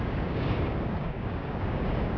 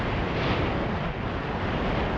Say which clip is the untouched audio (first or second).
second